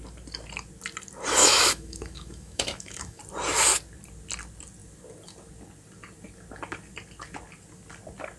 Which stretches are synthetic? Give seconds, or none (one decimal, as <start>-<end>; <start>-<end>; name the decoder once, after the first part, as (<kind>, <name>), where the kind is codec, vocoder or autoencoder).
1.4-3.2 (autoencoder, DAC-VAE)